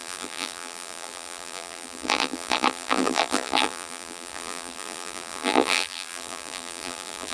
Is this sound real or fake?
fake